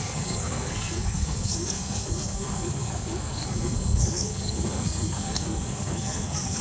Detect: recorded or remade remade